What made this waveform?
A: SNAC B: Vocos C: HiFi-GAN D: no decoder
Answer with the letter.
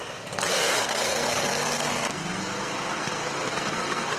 A